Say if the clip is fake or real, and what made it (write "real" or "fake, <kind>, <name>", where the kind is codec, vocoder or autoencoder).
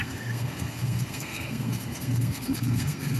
fake, codec, SNAC